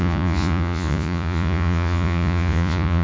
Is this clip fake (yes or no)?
yes